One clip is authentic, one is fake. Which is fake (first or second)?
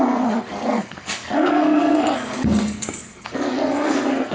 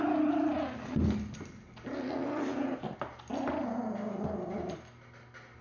first